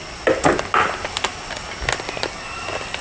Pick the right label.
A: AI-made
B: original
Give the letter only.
B